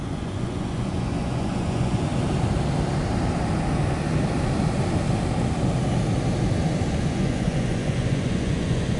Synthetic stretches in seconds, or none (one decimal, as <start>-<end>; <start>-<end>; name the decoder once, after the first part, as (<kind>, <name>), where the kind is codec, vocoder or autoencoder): 0.0-2.1 (vocoder, Vocos); 7.0-9.0